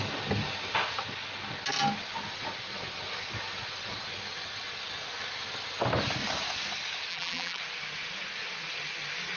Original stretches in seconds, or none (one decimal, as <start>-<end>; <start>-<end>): 0.0-7.1; 7.6-9.4